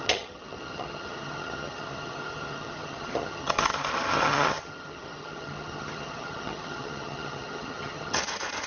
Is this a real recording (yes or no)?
no